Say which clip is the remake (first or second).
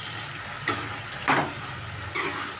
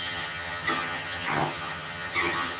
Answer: second